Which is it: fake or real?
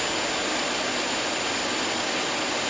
real